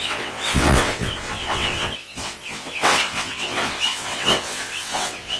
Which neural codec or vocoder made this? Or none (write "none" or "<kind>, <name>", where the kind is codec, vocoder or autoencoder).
vocoder, WaveNeXt